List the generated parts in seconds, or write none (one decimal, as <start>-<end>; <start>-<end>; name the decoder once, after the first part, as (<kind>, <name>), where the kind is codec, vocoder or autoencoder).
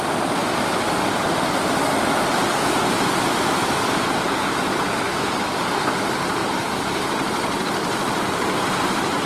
6.4-6.9 (vocoder, BigVGAN v2)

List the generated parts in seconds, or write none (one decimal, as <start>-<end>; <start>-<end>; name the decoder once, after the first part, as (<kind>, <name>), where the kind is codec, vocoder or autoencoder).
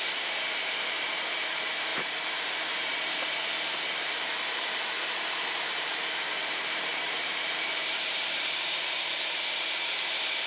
0.0-10.5 (vocoder, BigVGAN v2)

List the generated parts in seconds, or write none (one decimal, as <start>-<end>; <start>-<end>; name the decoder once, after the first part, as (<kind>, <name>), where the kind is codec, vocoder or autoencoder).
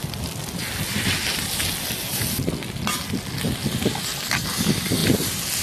none